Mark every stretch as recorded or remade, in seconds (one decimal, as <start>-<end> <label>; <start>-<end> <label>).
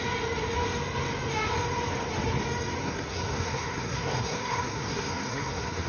0.0-2.8 recorded; 2.8-5.9 remade